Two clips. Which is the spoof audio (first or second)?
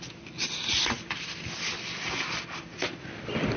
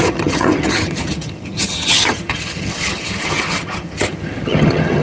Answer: second